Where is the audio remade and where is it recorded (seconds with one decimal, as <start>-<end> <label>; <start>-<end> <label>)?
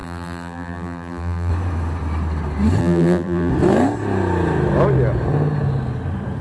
0.0-1.5 remade; 1.5-2.8 recorded; 2.8-3.5 remade; 3.5-6.4 recorded